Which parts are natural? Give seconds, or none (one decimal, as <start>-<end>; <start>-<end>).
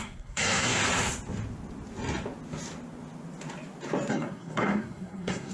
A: 0.8-4.1